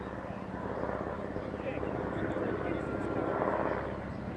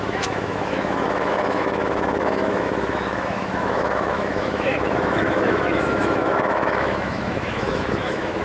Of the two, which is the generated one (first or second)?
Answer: second